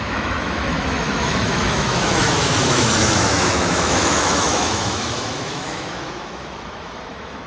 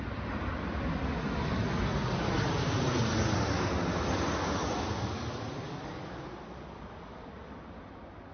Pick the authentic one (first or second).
second